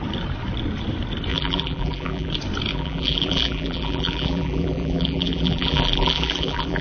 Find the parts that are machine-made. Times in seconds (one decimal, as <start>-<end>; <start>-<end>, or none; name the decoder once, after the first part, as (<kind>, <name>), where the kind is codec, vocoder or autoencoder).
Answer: 1.3-2.3 (vocoder, BigVGAN v2); 2.7-6.8